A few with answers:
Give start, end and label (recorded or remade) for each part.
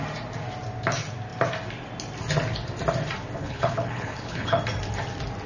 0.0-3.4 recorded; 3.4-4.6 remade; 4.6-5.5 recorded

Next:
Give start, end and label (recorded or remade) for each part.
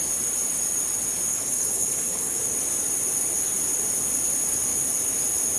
0.0-1.3 recorded; 1.3-2.4 remade; 2.4-5.6 recorded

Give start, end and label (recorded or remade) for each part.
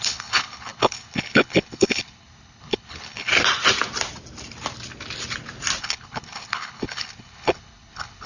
0.0-3.3 remade; 3.3-5.8 recorded; 5.8-8.3 remade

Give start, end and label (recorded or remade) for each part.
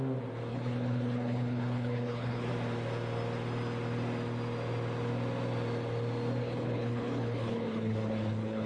0.0-0.5 recorded; 0.5-2.5 remade; 2.5-6.4 recorded; 6.4-8.7 remade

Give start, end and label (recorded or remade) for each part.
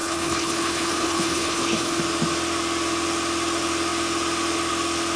0.0-2.0 remade; 2.0-5.2 recorded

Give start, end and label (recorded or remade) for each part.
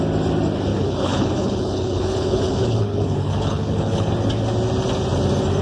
0.0-0.7 recorded; 0.7-4.1 remade; 4.1-5.6 recorded